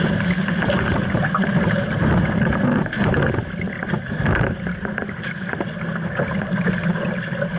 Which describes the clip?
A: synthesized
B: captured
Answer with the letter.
B